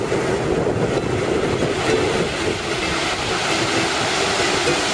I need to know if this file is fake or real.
real